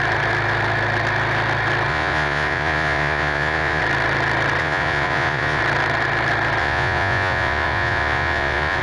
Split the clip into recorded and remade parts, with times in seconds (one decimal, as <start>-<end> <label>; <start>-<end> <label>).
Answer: 0.0-1.9 recorded; 1.9-3.8 remade; 3.8-4.6 recorded; 4.6-5.6 remade; 5.6-6.6 recorded; 6.6-8.8 remade